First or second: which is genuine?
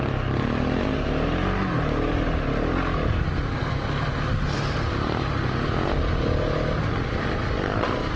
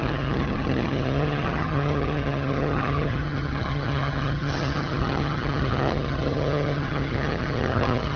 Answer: first